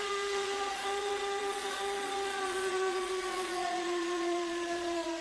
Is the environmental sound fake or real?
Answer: fake